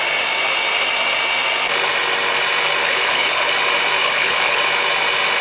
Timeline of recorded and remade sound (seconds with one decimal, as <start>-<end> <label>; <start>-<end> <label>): 0.0-2.8 recorded; 2.8-3.5 remade; 3.5-4.0 recorded; 4.0-4.6 remade; 4.6-5.4 recorded

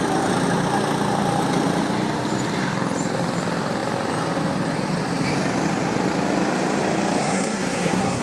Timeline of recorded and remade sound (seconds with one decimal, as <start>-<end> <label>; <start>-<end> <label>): 0.0-7.2 recorded; 7.2-8.2 remade

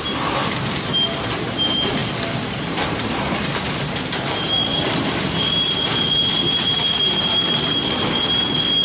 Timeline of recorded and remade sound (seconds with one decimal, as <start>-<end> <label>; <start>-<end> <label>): 0.0-8.8 recorded

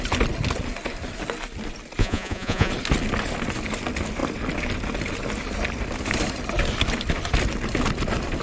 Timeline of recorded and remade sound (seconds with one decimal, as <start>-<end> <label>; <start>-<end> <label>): 0.0-2.0 recorded; 2.0-2.7 remade; 2.7-8.4 recorded